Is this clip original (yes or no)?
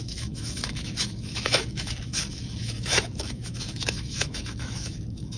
no